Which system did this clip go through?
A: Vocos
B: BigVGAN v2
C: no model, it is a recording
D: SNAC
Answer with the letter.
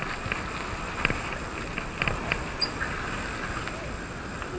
C